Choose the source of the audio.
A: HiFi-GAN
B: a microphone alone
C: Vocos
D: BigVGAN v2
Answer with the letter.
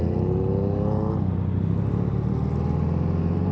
B